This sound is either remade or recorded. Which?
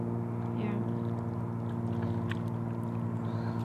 recorded